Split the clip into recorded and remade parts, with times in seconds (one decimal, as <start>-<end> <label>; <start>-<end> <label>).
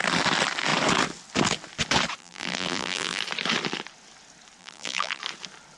0.0-2.2 recorded; 2.2-3.2 remade; 3.2-4.6 recorded; 4.6-5.2 remade; 5.2-5.8 recorded